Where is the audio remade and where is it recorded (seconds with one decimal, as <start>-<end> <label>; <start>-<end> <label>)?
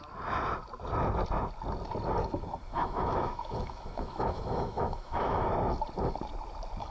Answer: 0.0-2.7 recorded; 2.7-5.5 remade; 5.5-6.9 recorded